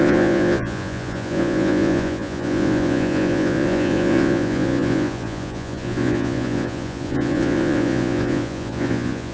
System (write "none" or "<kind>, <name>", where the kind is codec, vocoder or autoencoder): vocoder, Vocos